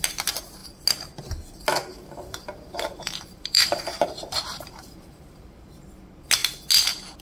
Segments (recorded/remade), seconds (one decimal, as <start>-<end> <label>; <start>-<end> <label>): 0.0-1.9 recorded; 1.9-5.9 remade; 5.9-7.2 recorded